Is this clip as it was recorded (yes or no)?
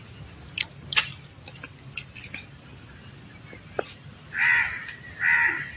yes